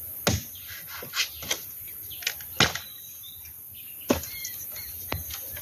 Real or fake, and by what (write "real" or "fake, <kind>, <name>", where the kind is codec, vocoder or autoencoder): real